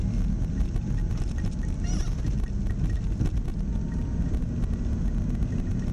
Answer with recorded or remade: recorded